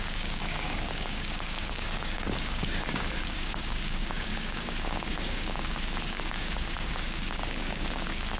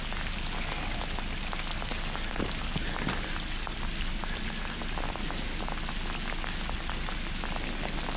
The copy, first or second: first